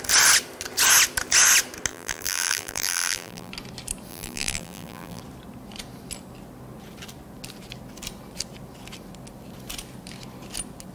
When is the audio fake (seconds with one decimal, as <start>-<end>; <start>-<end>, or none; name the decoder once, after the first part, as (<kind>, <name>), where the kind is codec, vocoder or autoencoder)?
1.9-3.5 (vocoder, BigVGAN v2); 4.1-5.2